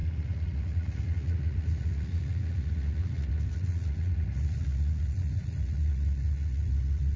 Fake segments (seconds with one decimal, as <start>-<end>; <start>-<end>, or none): 0.0-7.2